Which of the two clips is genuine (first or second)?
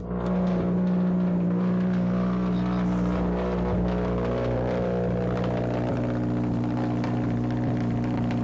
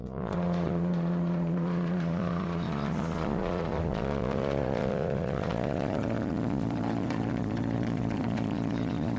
first